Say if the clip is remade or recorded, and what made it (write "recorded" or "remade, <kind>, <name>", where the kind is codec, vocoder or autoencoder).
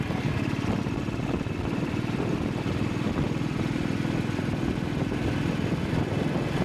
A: remade, vocoder, BigVGAN v2